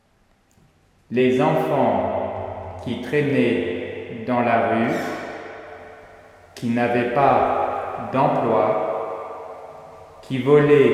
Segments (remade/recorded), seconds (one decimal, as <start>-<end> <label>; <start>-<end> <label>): 0.0-10.9 recorded